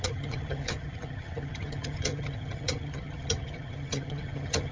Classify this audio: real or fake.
fake